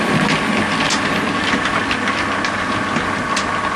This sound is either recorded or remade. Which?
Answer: recorded